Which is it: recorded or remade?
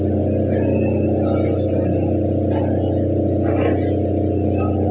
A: recorded